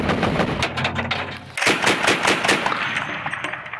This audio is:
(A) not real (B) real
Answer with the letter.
B